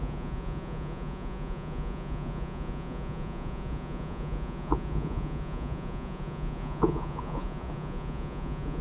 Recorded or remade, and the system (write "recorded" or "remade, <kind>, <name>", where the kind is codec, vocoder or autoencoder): remade, vocoder, Vocos